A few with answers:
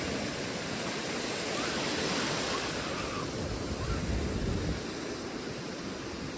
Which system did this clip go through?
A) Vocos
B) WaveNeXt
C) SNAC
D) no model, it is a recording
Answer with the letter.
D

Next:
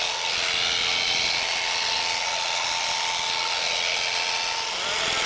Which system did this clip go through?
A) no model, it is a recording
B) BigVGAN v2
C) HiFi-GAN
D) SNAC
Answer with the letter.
A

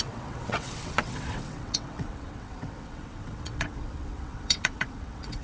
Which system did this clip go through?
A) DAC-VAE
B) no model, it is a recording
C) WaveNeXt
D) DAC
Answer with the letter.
C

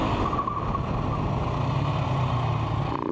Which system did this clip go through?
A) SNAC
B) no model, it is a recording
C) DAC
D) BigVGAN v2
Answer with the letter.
B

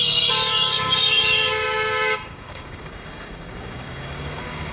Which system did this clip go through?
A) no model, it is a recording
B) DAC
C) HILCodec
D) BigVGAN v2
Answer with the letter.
B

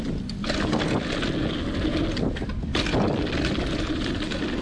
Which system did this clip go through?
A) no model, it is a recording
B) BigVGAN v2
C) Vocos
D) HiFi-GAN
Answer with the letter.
A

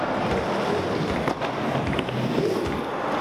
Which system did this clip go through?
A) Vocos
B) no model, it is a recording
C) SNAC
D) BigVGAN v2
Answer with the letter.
B